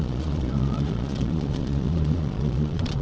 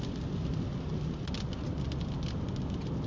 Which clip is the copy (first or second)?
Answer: first